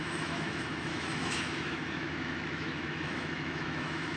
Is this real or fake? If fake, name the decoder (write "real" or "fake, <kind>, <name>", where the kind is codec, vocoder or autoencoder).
fake, autoencoder, DAC-VAE